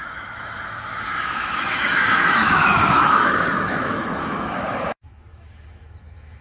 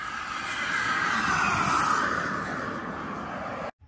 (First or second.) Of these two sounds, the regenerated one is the first